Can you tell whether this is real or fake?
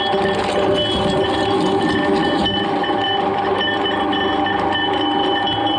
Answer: real